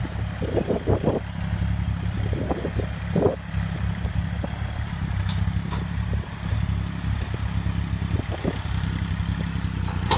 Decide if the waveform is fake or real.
fake